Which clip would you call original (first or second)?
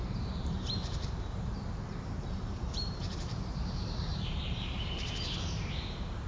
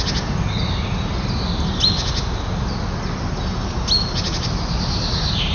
second